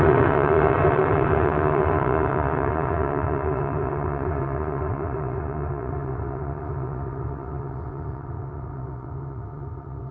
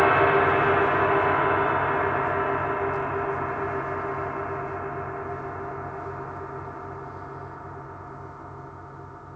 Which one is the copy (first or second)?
first